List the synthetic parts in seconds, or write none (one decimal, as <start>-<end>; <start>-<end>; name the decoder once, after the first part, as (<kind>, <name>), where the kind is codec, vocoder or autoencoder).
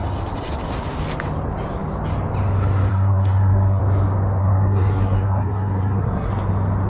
2.9-3.8 (codec, SNAC); 4.4-6.3